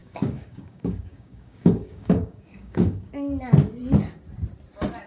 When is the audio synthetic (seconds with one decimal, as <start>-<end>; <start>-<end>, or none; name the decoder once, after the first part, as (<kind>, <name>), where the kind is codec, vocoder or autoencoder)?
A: 0.0-3.1 (codec, DAC)